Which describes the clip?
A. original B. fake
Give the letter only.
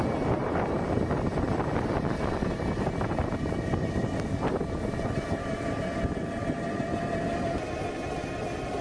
A